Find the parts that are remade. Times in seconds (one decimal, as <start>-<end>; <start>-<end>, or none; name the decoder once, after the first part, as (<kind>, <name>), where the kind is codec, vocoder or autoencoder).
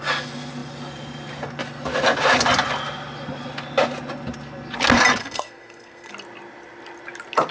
5.2-6.1 (codec, SNAC)